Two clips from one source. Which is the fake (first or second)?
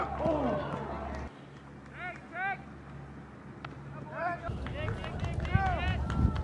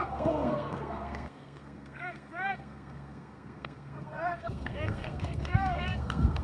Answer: second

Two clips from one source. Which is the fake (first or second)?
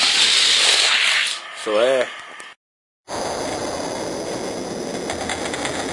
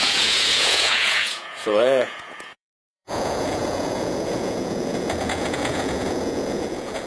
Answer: second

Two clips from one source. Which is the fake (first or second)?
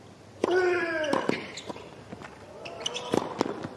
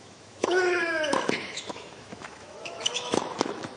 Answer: second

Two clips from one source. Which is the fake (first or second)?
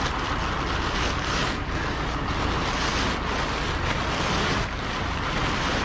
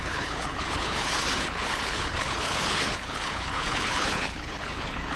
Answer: second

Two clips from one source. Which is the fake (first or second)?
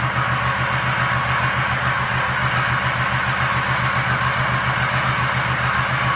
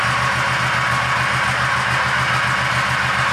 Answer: first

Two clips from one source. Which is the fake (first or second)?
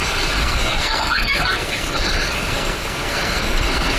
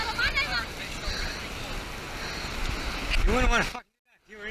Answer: first